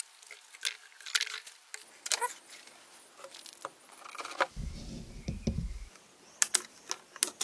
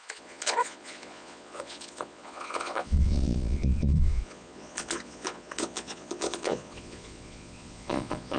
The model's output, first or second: second